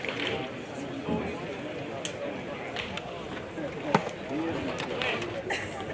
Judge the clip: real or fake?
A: real